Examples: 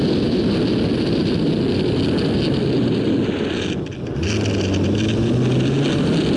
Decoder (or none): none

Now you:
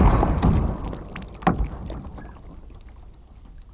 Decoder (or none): none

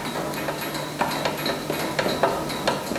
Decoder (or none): none